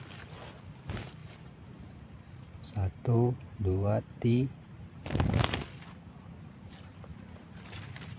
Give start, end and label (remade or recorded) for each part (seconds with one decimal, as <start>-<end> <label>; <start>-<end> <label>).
0.0-1.2 recorded; 1.2-4.8 remade; 4.8-7.1 recorded; 7.1-7.6 remade; 7.6-8.2 recorded